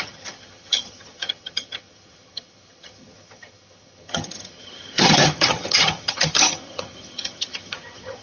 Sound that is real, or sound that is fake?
fake